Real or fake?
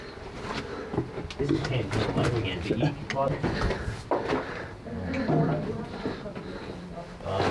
real